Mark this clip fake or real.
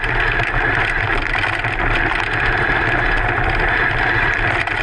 real